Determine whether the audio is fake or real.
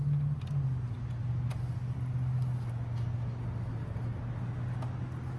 real